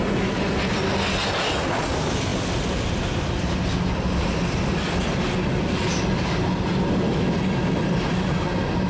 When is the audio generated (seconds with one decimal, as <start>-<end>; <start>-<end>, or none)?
none